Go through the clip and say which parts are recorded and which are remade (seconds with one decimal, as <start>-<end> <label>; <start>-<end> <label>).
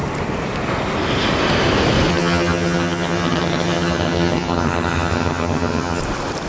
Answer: 0.0-2.1 recorded; 2.1-6.0 remade; 6.0-6.5 recorded